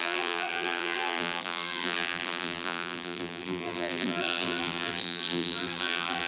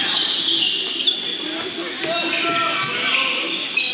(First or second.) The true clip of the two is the second